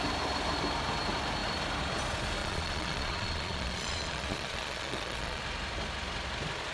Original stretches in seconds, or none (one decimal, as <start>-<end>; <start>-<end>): 0.0-2.4; 5.4-6.7